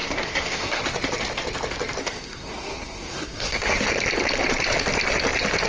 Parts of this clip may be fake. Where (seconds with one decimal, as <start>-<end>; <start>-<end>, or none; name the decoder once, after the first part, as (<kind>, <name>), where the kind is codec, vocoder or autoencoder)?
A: 0.0-0.8 (codec, SNAC); 2.0-3.8